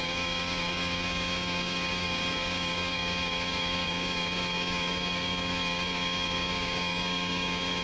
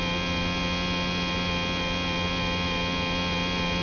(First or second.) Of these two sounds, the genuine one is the second